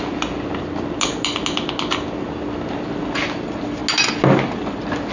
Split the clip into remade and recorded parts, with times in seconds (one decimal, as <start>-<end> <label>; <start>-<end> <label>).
0.0-5.1 recorded